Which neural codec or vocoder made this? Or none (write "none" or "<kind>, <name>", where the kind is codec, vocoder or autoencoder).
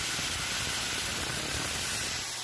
none